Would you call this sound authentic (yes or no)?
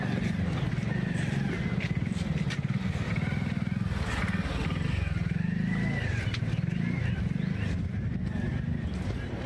yes